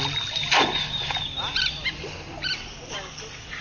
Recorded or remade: recorded